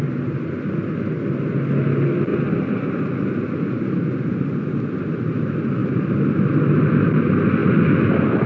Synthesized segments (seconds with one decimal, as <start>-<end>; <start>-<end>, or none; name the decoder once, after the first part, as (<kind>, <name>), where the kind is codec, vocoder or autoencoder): none